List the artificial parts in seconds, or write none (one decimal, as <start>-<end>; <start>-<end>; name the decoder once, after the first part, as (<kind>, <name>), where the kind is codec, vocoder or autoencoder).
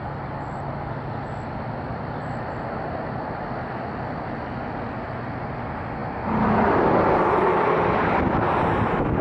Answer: none